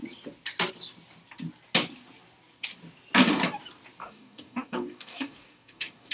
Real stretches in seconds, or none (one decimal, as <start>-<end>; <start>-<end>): 0.0-4.0